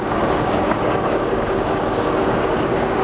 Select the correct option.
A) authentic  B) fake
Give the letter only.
B